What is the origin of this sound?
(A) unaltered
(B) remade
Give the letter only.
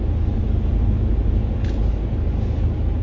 A